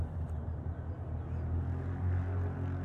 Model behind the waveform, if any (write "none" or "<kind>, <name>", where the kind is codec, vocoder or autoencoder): none